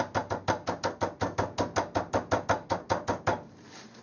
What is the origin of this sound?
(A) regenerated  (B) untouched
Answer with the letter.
B